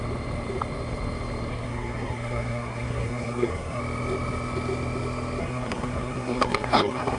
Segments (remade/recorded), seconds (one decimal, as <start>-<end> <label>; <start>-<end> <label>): 0.0-1.5 recorded; 1.5-3.8 remade; 3.8-5.4 recorded; 5.4-7.2 remade